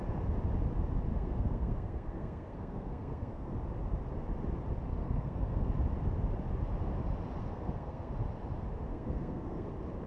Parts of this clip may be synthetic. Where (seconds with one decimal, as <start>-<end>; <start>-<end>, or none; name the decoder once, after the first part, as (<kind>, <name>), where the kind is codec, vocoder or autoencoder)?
1.1-3.5 (codec, SNAC); 5.0-5.7; 7.4-8.1; 8.9-9.7